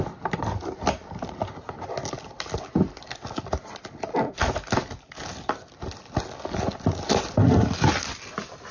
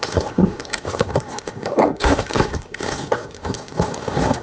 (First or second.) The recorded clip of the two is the first